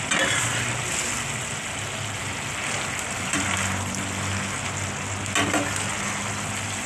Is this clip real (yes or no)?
yes